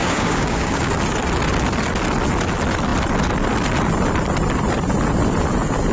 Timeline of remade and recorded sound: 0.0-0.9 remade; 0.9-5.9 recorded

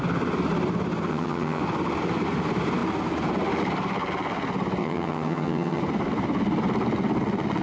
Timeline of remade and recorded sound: 0.0-1.1 recorded; 1.1-1.6 remade; 1.6-4.8 recorded; 4.8-5.8 remade; 5.8-7.6 recorded

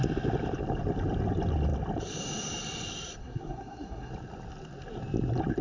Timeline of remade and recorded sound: 0.0-3.2 recorded; 3.2-4.1 remade; 4.1-5.6 recorded